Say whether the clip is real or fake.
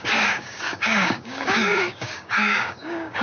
fake